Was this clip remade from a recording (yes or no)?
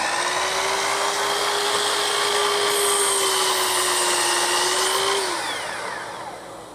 no